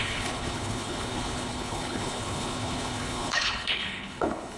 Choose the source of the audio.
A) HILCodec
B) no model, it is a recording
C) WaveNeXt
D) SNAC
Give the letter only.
A